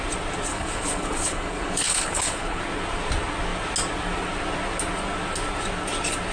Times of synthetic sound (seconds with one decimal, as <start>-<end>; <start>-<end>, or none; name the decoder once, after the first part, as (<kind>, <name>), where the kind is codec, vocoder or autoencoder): 0.5-2.6 (codec, HILCodec)